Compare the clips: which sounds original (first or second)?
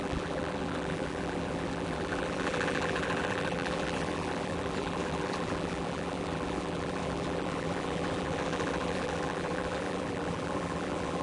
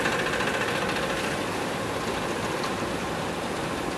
second